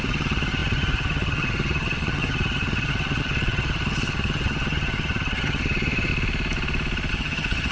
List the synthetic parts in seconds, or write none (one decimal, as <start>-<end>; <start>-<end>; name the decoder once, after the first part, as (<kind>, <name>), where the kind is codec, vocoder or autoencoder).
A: 0.0-6.1 (vocoder, HiFi-GAN); 7.1-7.7